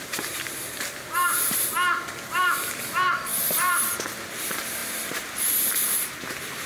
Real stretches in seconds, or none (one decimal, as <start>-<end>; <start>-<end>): 1.7-2.3; 3.3-4.3